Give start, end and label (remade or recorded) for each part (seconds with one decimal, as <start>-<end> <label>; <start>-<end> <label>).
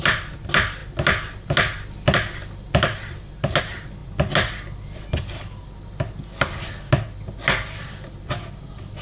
0.0-9.0 recorded